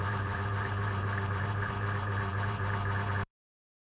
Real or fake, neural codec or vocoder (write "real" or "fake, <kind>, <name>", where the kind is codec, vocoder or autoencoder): fake, vocoder, BigVGAN v2